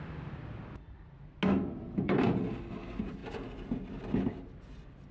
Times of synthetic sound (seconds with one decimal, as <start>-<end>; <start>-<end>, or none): 1.8-2.4